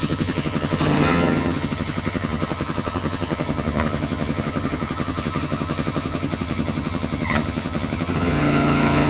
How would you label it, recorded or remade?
remade